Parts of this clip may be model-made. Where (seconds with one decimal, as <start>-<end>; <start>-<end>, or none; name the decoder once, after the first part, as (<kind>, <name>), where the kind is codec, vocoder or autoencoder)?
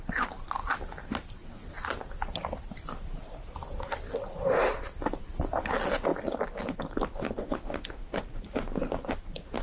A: 7.4-8.1 (autoencoder, DAC-VAE)